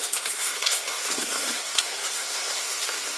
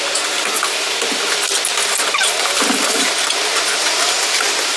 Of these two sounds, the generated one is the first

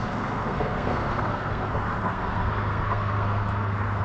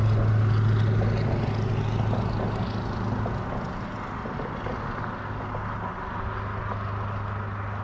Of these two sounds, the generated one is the first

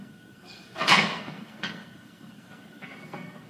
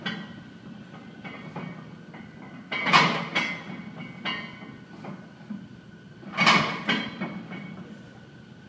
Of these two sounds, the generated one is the first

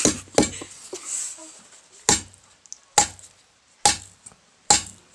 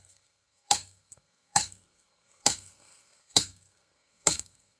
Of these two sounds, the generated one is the second